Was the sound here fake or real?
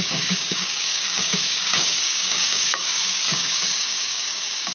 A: fake